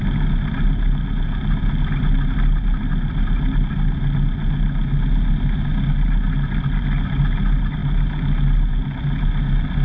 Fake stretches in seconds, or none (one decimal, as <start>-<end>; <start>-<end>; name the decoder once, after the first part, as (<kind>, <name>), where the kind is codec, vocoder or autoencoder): none